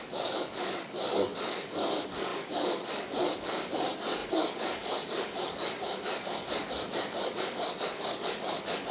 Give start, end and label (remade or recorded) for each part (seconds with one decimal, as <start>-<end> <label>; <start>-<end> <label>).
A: 0.0-8.9 remade